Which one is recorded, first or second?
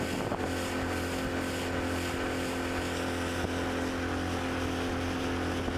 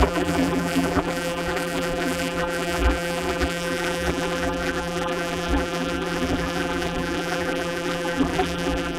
first